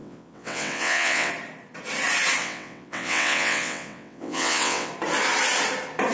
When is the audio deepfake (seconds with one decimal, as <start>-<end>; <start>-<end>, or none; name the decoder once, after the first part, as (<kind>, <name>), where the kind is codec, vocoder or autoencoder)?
0.0-1.3 (vocoder, WaveNeXt); 2.4-4.9